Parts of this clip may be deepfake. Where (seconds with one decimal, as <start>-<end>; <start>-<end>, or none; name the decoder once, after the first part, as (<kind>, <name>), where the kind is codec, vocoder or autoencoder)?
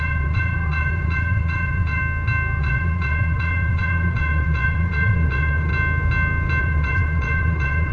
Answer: 0.0-2.0 (vocoder, Vocos); 2.6-5.7; 6.6-7.9